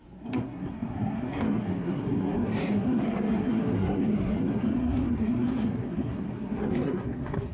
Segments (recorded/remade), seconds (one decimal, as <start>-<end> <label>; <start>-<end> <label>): 0.0-7.5 remade